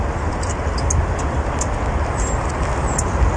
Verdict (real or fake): real